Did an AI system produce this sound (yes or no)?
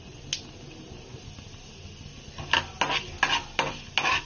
no